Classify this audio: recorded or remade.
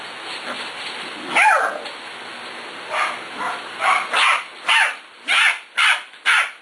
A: recorded